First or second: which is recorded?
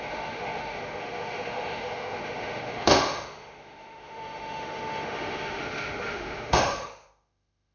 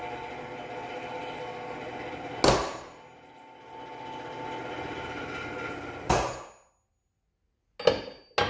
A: second